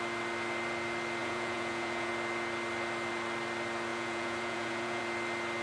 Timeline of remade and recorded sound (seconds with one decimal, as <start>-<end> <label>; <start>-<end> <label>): 0.0-1.2 recorded; 1.2-2.1 remade; 2.1-3.9 recorded; 3.9-5.0 remade; 5.0-5.6 recorded